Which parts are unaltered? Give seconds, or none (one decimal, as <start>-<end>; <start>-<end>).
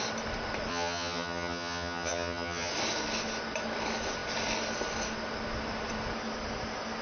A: 0.0-0.7; 2.7-7.0